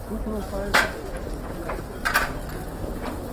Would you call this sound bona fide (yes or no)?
yes